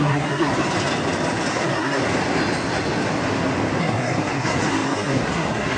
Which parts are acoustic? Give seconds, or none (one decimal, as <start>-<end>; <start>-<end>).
0.5-1.5; 2.0-3.8